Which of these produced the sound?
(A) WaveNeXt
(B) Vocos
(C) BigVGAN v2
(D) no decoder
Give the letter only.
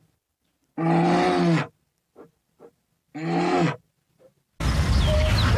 D